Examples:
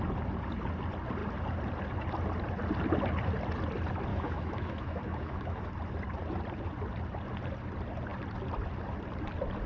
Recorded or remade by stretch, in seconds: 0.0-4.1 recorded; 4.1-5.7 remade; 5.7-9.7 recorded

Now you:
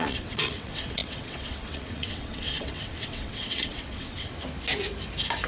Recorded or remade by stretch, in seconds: 0.0-4.3 remade; 4.3-5.5 recorded